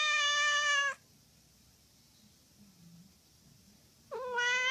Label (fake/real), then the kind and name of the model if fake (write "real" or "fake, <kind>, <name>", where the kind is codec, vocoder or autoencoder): real